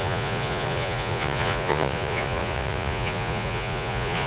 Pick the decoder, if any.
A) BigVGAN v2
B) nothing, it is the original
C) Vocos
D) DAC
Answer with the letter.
C